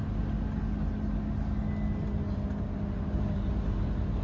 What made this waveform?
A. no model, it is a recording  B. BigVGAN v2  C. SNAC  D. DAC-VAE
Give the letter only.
A